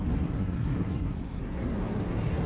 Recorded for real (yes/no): no